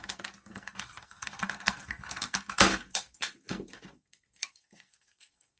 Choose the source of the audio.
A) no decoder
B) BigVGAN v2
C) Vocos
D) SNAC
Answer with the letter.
D